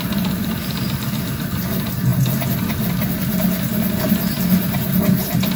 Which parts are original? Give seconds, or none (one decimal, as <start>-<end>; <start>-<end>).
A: 2.1-4.0; 4.9-5.6